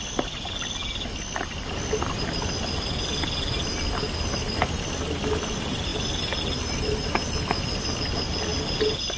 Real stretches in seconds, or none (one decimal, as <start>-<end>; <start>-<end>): 0.0-9.2